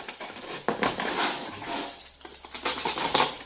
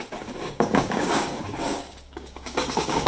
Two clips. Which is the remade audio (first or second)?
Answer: second